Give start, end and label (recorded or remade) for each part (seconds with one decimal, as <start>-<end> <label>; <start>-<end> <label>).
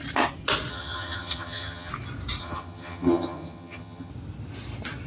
0.0-0.7 recorded; 0.7-1.9 remade; 1.9-2.4 recorded; 2.4-4.1 remade; 4.1-5.1 recorded